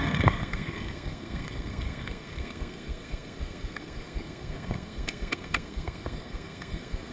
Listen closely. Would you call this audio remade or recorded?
remade